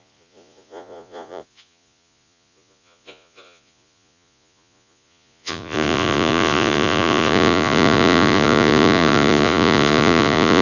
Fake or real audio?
fake